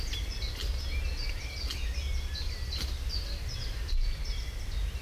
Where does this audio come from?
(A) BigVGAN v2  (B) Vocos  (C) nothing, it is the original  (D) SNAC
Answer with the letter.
C